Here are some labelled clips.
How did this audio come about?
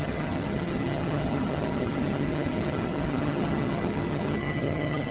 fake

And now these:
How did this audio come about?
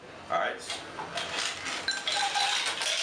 real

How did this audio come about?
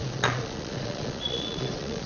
fake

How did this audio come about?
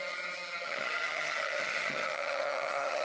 fake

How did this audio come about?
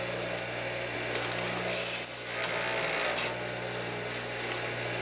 real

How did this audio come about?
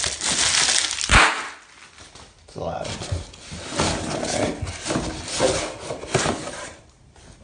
real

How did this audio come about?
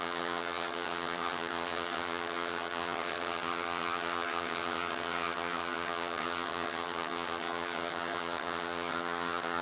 fake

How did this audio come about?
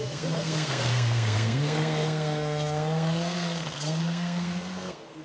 fake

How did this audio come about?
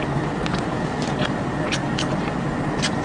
real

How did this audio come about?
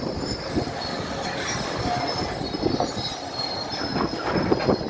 real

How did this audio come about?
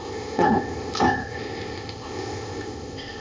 fake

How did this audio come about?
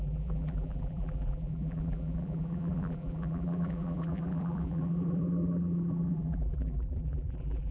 fake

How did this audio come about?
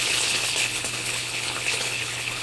fake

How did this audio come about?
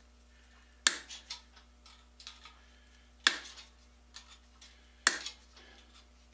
real